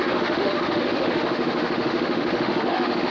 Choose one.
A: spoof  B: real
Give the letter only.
A